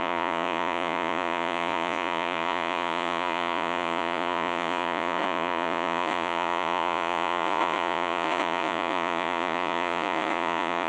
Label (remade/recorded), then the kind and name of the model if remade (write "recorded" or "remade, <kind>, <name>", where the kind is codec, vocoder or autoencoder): remade, vocoder, Vocos